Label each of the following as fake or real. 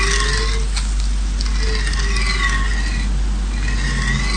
real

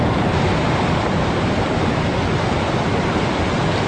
real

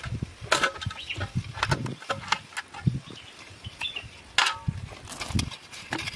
real